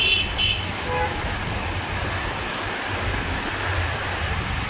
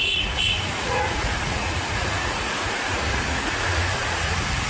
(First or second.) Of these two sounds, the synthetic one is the second